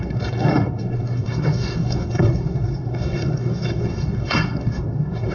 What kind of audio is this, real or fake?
fake